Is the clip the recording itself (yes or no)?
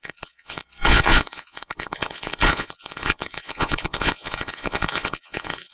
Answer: no